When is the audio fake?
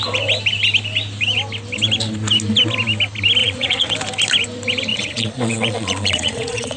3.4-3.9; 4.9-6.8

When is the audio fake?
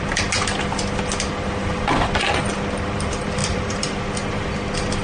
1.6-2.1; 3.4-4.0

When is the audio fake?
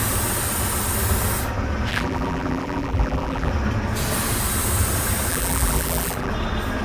1.9-3.5; 5.3-6.3